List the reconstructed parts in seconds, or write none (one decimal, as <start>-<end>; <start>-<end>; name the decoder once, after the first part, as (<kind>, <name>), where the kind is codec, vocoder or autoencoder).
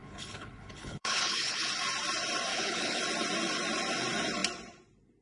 0.0-1.7 (codec, HILCodec); 2.5-3.0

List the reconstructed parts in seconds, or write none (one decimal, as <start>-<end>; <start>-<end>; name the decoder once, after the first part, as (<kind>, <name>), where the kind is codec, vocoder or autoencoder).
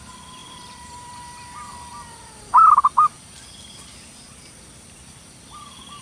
0.4-1.3 (vocoder, BigVGAN v2)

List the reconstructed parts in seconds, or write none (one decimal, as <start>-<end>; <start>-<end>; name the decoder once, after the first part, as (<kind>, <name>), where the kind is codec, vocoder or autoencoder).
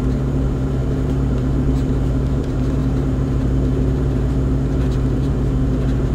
0.0-6.1 (vocoder, BigVGAN v2)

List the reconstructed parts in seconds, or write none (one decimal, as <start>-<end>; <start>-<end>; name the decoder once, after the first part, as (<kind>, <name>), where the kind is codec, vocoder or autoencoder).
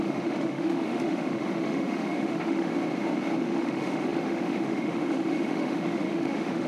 0.0-2.7 (autoencoder, DAC-VAE); 3.4-6.7